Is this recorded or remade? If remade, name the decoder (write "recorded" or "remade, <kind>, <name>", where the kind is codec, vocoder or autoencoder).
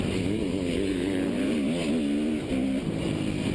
recorded